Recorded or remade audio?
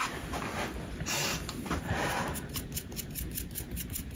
recorded